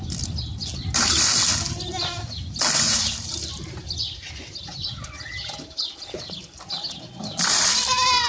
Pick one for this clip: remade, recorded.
recorded